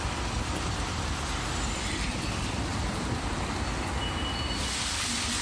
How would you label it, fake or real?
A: real